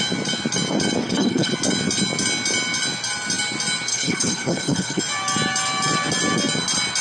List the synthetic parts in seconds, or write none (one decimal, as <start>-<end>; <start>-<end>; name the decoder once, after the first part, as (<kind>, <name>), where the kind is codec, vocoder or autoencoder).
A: 1.0-1.5 (codec, HILCodec); 3.9-5.0